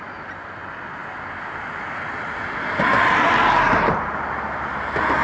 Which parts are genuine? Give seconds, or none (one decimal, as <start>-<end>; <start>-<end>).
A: 0.0-5.2